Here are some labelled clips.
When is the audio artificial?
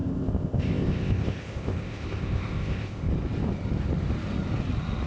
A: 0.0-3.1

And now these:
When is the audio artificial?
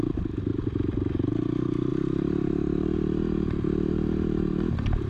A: 0.0-0.5; 1.3-5.1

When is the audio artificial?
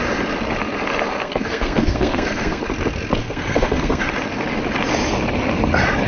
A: 1.2-2.6; 3.2-4.0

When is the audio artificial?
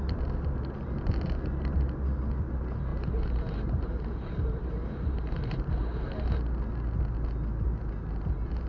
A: 2.9-6.2